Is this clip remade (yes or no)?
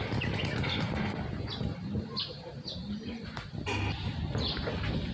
no